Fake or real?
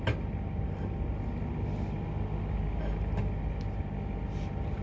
real